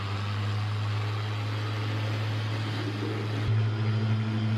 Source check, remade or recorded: recorded